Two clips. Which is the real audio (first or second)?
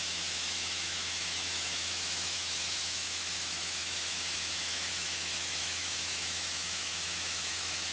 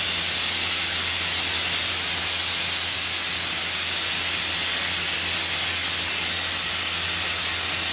second